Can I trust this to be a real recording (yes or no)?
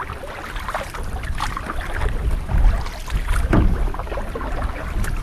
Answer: yes